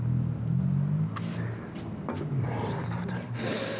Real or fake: real